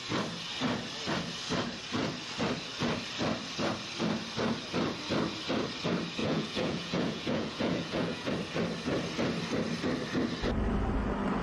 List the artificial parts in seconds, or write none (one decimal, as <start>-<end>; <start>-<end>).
6.2-8.3